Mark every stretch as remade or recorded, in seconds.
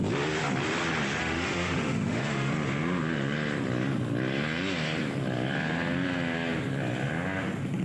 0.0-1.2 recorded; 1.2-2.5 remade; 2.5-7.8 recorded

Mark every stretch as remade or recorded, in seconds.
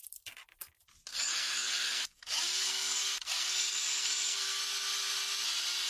0.0-1.1 recorded; 1.1-4.6 remade; 4.6-5.9 recorded